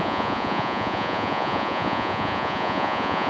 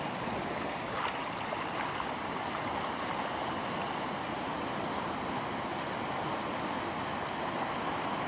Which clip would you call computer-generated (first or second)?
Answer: first